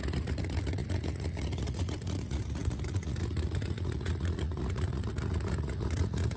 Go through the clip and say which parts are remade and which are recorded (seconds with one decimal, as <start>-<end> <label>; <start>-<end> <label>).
0.0-6.4 remade